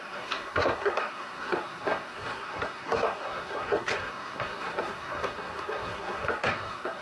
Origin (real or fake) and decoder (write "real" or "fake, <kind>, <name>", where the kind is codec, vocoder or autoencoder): fake, codec, SNAC